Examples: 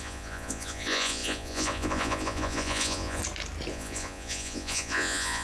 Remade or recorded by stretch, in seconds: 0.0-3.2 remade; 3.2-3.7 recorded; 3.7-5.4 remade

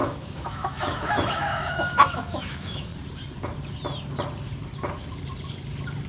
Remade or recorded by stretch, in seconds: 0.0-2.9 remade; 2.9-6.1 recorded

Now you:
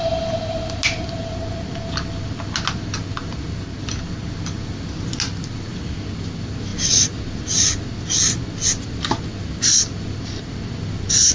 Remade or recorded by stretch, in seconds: 0.0-11.3 recorded